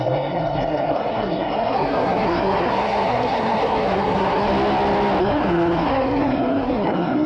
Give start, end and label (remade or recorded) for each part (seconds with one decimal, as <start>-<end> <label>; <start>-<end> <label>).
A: 0.0-4.5 remade; 4.5-5.2 recorded; 5.2-7.3 remade

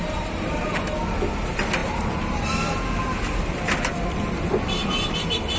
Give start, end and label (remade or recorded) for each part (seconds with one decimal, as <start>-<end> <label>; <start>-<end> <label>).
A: 0.0-5.6 recorded

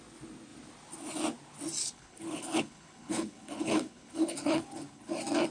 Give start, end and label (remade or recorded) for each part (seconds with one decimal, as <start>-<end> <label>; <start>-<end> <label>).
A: 0.0-1.8 recorded; 1.8-5.1 remade; 5.1-5.5 recorded

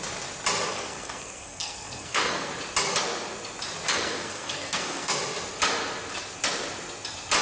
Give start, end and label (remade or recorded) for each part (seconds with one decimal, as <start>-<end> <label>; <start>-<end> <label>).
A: 0.0-0.7 recorded; 0.7-2.5 remade; 2.5-3.9 recorded; 3.9-5.2 remade; 5.2-7.4 recorded

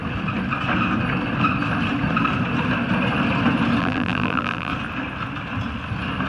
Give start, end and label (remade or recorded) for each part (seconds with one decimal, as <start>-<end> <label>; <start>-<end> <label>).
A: 0.0-3.8 recorded; 3.8-4.7 remade; 4.7-6.3 recorded

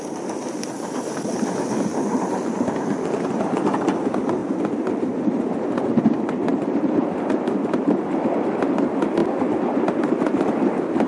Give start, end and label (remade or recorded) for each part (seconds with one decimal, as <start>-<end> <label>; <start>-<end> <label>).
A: 0.0-1.9 recorded; 1.9-2.5 remade; 2.5-6.5 recorded; 6.5-8.6 remade; 8.6-11.1 recorded

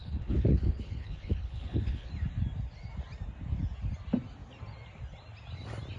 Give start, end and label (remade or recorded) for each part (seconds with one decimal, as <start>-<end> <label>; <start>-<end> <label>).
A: 0.0-2.1 remade; 2.1-6.0 recorded

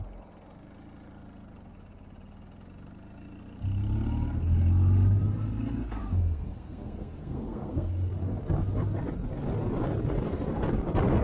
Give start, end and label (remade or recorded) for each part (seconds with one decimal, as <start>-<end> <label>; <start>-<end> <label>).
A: 0.0-6.0 recorded; 6.0-7.9 remade; 7.9-11.2 recorded